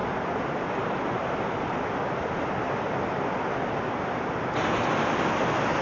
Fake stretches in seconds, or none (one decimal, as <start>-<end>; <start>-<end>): none